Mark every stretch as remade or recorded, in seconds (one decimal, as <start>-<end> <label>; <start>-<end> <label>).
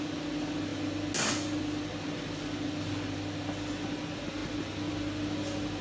0.0-5.8 recorded